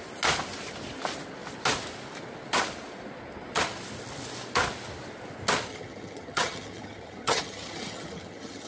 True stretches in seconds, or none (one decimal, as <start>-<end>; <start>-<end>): 0.0-5.7